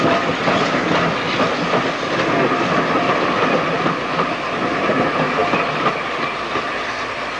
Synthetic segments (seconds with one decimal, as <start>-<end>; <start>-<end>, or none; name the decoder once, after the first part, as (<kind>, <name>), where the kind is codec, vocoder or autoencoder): none